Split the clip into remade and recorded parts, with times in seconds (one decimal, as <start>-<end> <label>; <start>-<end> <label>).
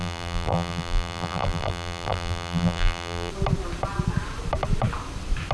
0.0-3.3 remade; 3.3-5.5 recorded